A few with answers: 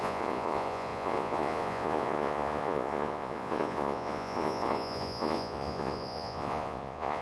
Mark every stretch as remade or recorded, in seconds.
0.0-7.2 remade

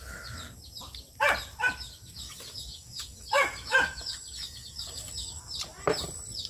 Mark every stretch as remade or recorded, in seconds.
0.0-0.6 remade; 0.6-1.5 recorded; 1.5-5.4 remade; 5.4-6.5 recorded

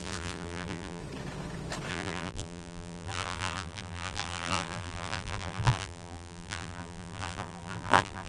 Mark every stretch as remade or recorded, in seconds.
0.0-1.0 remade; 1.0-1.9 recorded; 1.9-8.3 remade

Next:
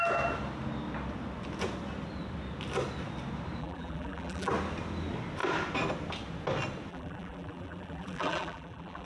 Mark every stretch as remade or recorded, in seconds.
0.0-3.6 recorded; 3.6-4.5 remade; 4.5-6.9 recorded; 6.9-9.1 remade

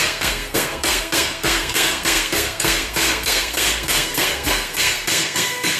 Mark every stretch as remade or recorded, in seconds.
0.0-5.8 remade